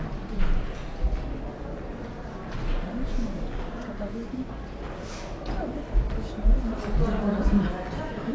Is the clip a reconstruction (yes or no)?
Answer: no